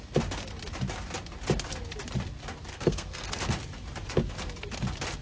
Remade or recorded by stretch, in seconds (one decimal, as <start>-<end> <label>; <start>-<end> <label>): 0.0-2.7 recorded; 2.7-3.3 remade; 3.3-5.2 recorded